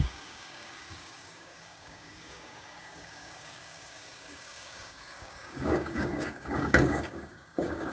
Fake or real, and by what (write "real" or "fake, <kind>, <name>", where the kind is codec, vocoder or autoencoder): fake, codec, DAC